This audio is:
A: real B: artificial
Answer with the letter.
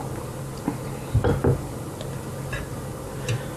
A